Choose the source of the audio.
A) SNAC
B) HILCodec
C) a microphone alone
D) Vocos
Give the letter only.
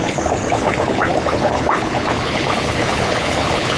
B